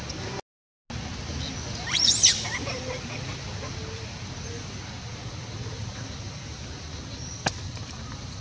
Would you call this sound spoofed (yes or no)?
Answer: no